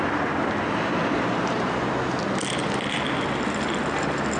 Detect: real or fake real